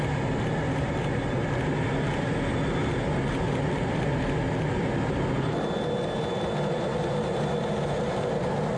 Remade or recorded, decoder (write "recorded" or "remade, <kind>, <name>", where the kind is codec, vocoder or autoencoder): recorded